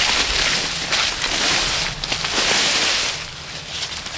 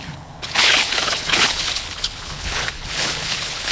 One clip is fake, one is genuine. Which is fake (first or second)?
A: second